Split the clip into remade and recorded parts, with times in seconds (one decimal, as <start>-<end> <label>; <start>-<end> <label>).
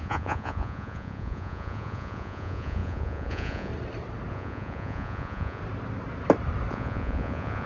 0.0-3.7 remade; 3.7-4.3 recorded; 4.3-5.6 remade; 5.6-6.7 recorded; 6.7-7.7 remade